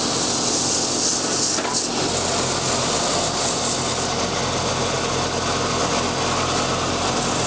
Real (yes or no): yes